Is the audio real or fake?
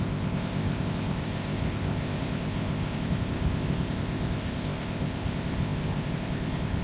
fake